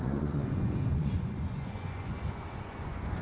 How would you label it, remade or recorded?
remade